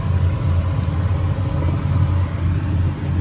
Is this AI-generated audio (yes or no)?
no